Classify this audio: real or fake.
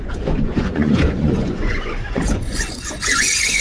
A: fake